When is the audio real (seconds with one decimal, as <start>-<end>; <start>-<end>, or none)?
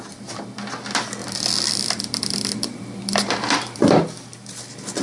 0.0-1.2; 3.9-5.0